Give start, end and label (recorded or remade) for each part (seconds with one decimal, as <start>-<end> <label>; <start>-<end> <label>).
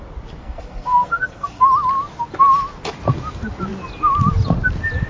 0.0-0.4 recorded; 0.4-1.6 remade; 1.6-5.1 recorded